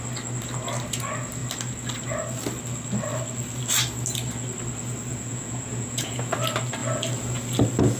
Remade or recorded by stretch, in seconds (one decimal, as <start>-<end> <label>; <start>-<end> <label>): 0.0-5.1 recorded; 5.1-6.3 remade; 6.3-8.0 recorded